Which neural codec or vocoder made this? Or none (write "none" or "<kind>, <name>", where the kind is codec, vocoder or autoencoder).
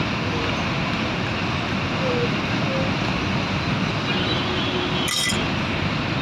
none